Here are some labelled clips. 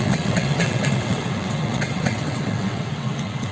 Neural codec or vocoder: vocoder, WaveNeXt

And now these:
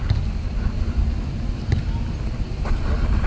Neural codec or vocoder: none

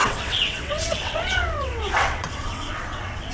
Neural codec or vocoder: vocoder, WaveNeXt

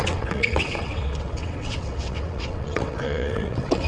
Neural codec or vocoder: vocoder, WaveNeXt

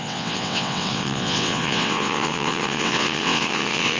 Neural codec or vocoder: vocoder, WaveNeXt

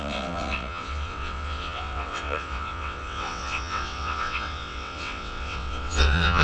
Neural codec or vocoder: vocoder, WaveNeXt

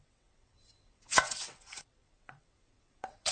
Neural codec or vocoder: vocoder, WaveNeXt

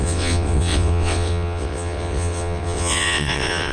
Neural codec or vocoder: vocoder, WaveNeXt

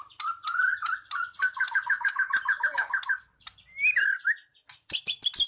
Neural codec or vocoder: none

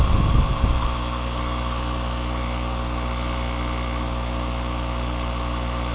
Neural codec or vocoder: none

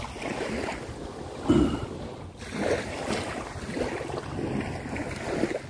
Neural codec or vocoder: none